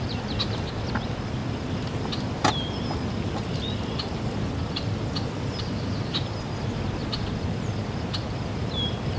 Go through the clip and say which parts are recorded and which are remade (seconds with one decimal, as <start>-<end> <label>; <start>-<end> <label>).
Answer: 0.0-9.2 recorded